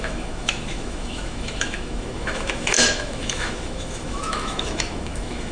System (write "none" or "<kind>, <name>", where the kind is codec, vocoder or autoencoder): autoencoder, DAC-VAE